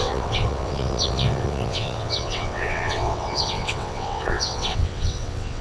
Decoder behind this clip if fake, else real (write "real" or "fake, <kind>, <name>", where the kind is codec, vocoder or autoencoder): fake, vocoder, WaveNeXt